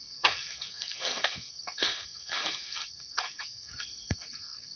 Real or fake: fake